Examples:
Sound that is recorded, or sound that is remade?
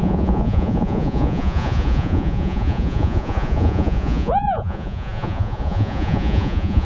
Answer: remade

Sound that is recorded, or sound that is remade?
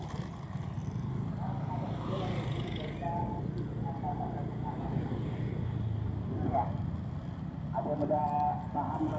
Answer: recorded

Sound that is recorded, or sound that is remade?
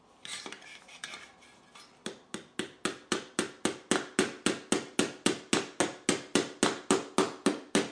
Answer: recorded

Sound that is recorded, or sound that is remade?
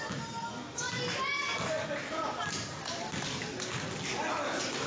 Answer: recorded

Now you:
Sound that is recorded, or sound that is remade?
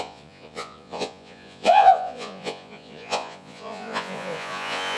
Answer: remade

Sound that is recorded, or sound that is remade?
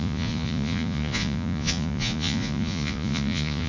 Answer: remade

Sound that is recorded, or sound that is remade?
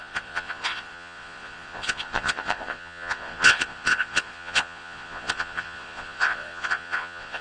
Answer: remade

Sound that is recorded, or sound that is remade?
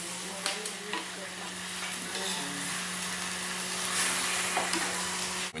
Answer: recorded